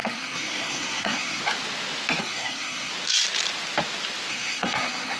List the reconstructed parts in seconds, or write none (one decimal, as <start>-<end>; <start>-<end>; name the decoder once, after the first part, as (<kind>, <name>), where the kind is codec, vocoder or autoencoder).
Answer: 0.0-1.4 (codec, SNAC); 2.2-2.9; 4.3-5.2